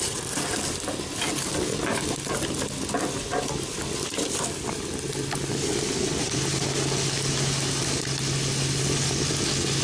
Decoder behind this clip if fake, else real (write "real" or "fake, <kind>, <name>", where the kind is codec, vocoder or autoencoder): real